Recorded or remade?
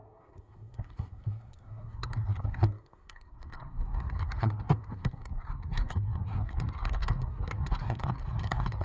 remade